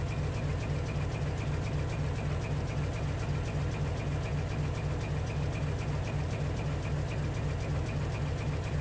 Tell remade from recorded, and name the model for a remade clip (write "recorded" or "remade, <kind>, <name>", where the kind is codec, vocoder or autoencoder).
recorded